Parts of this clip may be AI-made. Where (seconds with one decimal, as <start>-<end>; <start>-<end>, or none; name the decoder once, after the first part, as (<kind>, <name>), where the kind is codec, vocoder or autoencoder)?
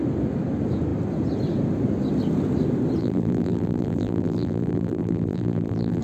3.0-6.0 (vocoder, BigVGAN v2)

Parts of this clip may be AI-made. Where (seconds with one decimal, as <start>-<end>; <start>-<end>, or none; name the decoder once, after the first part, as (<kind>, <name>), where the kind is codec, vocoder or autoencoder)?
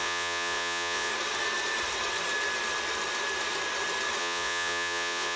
0.0-1.1 (vocoder, Vocos); 4.2-5.4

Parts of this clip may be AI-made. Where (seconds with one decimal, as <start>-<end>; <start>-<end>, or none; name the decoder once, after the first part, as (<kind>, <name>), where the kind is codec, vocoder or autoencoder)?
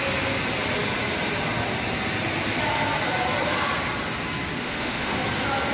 4.6-5.2 (autoencoder, DAC-VAE)